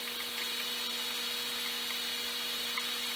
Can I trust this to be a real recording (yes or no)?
yes